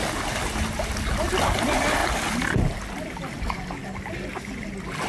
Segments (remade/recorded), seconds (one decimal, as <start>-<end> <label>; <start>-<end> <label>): 0.0-5.1 recorded